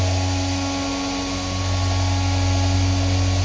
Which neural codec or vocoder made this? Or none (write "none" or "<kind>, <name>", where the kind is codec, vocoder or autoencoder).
none